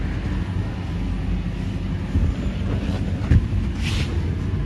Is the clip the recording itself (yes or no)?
yes